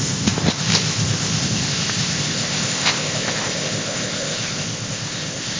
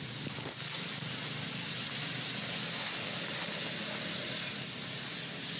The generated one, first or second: first